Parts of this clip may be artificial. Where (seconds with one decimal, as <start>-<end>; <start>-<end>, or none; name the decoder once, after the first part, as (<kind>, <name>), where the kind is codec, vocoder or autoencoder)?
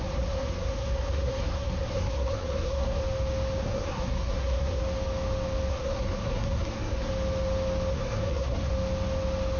0.0-3.0 (codec, SNAC); 3.6-4.8; 5.7-7.1; 7.9-8.7